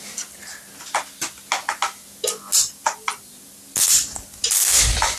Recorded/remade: recorded